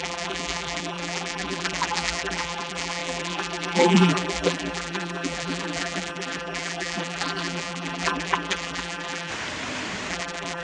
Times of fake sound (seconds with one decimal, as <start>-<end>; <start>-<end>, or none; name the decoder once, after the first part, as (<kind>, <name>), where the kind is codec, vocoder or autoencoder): 0.0-9.3 (vocoder, BigVGAN v2); 10.1-10.6